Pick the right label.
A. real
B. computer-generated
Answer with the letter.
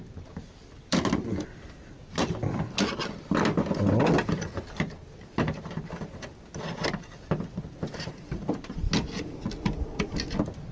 A